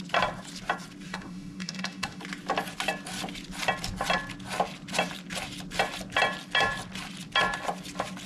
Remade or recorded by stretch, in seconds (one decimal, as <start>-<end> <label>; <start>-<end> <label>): 0.0-1.1 recorded; 1.1-2.2 remade; 2.2-8.3 recorded